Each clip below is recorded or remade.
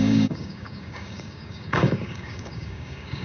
remade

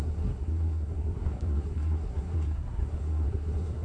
remade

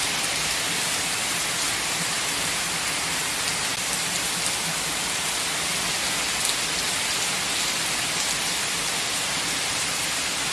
recorded